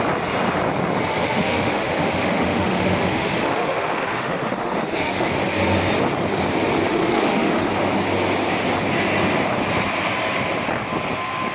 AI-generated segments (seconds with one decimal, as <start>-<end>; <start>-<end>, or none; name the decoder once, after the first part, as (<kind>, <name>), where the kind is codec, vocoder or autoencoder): 1.2-5.3 (autoencoder, DAC-VAE); 6.9-7.7